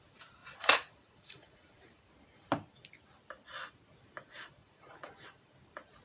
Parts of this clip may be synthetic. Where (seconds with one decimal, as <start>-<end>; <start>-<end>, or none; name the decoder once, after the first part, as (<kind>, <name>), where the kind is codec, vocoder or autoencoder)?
0.4-2.1 (vocoder, Vocos); 4.6-5.1